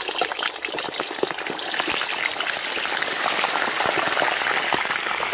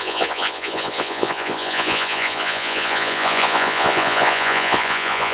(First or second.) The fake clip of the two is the second